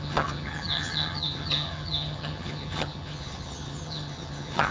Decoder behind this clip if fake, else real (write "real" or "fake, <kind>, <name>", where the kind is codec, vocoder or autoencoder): fake, vocoder, HiFi-GAN